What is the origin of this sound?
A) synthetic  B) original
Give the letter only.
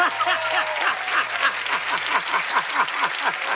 B